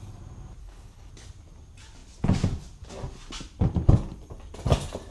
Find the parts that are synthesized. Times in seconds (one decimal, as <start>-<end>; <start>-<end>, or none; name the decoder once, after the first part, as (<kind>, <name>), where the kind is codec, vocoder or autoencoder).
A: 0.6-1.1 (codec, HILCodec)